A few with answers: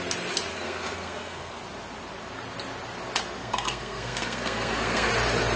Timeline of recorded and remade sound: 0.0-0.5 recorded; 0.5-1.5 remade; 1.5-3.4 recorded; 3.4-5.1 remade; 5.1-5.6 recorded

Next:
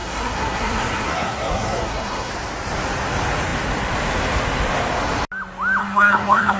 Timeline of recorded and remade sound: 0.0-2.3 remade; 2.3-5.8 recorded; 5.8-6.6 remade

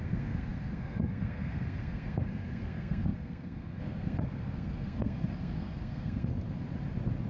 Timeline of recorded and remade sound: 0.0-6.3 remade; 6.3-7.3 recorded

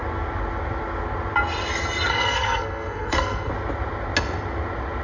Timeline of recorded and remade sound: 0.0-2.1 recorded; 2.1-3.5 remade; 3.5-5.0 recorded

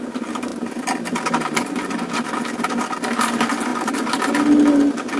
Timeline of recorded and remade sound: 0.0-5.2 recorded

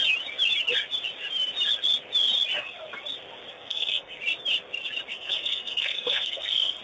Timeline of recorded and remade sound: 0.0-3.5 recorded; 3.5-4.2 remade; 4.2-5.1 recorded; 5.1-6.8 remade

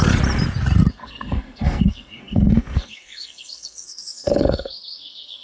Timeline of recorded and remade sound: 0.0-0.9 recorded; 0.9-5.4 remade